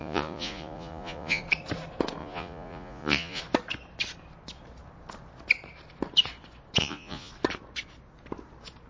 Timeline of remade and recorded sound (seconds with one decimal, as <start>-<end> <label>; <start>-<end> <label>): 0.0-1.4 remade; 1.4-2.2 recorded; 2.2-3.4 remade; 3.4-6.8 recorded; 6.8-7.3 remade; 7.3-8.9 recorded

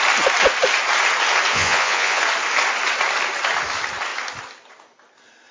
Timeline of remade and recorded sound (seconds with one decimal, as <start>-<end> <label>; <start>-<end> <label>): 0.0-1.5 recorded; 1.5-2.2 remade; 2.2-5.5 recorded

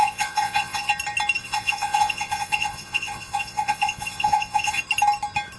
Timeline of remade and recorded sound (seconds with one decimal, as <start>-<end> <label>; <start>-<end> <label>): 0.0-0.9 remade; 0.9-1.4 recorded; 1.4-4.8 remade; 4.8-5.6 recorded

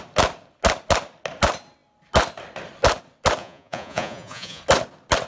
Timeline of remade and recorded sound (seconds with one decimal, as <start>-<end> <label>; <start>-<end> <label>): 0.0-3.4 recorded; 3.4-4.6 remade; 4.6-5.3 recorded

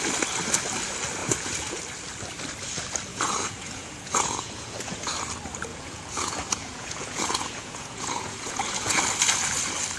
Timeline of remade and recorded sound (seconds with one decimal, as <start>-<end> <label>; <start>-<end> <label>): 0.0-1.2 recorded; 1.2-1.8 remade; 1.8-3.1 recorded; 3.1-5.1 remade; 5.1-5.7 recorded; 5.7-9.0 remade; 9.0-10.0 recorded

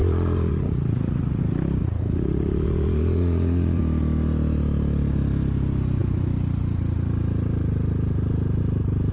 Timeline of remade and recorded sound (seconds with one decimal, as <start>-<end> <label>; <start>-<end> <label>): 0.0-1.4 remade; 1.4-1.8 recorded; 1.8-3.8 remade; 3.8-9.1 recorded

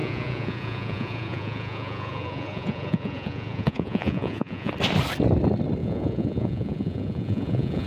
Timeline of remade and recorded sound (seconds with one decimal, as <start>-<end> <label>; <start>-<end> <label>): 0.0-4.7 remade; 4.7-5.8 recorded; 5.8-7.9 remade